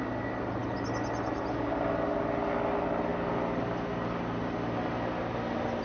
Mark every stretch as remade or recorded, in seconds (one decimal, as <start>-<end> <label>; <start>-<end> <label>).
0.0-5.8 recorded